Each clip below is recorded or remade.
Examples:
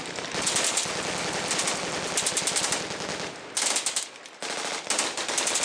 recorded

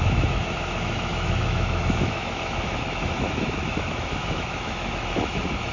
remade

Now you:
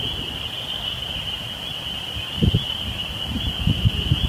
recorded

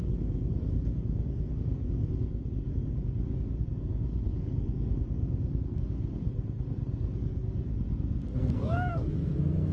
remade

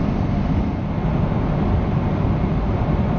recorded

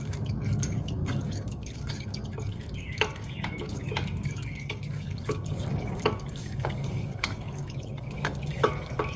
remade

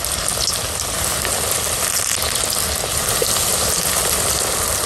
recorded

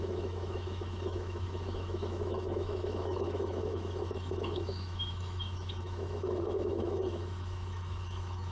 remade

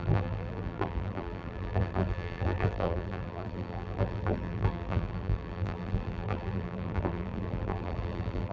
remade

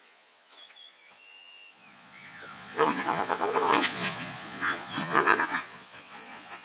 remade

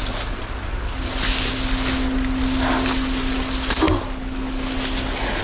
recorded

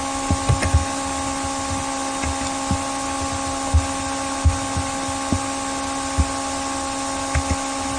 recorded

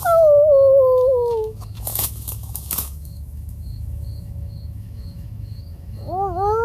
remade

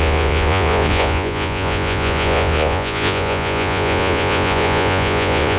remade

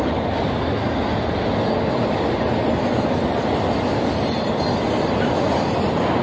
recorded